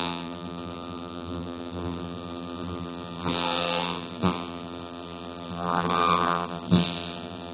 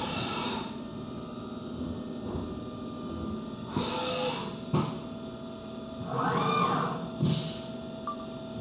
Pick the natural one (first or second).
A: second